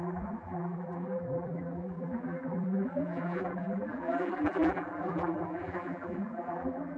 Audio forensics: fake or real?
fake